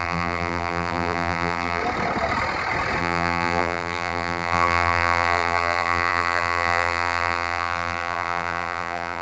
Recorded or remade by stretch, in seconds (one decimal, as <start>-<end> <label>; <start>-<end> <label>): 0.0-1.8 remade; 1.8-3.0 recorded; 3.0-9.2 remade